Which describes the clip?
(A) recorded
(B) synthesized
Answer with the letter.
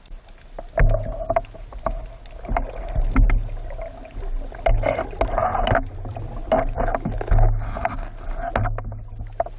A